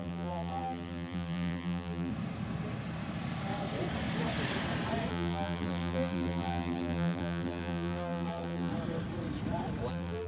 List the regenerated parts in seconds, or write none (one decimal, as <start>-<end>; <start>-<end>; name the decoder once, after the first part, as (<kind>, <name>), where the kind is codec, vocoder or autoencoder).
0.0-2.1 (vocoder, BigVGAN v2); 5.1-8.7; 9.9-10.3